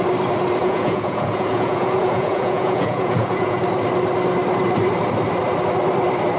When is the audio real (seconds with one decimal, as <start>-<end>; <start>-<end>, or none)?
0.0-0.6; 3.6-6.4